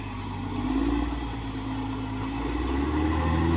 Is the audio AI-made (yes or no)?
no